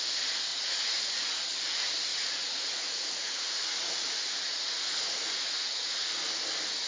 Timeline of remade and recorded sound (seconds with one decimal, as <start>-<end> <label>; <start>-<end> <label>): 0.0-0.5 recorded; 0.5-1.3 remade; 1.3-2.1 recorded; 2.1-6.2 remade; 6.2-6.9 recorded